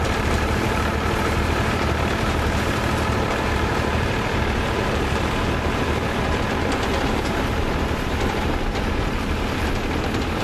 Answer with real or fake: fake